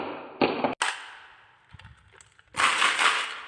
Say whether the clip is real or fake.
real